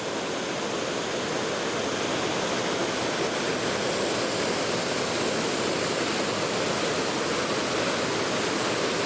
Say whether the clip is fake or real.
real